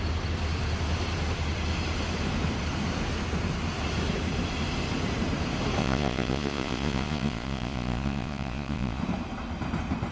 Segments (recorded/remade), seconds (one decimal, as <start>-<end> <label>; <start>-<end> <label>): 0.0-5.8 recorded; 5.8-9.0 remade; 9.0-10.1 recorded